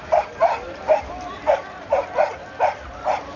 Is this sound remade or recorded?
recorded